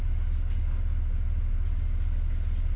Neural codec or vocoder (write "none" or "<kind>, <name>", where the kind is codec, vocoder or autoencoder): none